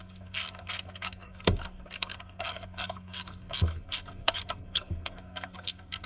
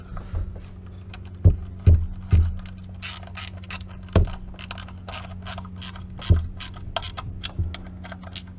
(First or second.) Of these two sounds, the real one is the second